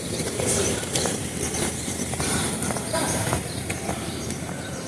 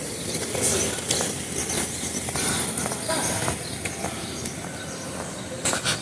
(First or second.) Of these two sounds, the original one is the second